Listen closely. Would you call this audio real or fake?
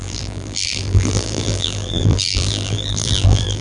fake